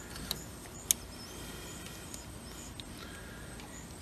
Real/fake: real